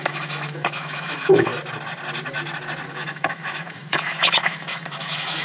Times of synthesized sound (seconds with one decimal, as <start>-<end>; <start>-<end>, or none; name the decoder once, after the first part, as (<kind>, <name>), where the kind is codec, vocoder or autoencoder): 0.0-1.5 (autoencoder, DAC-VAE); 2.9-5.4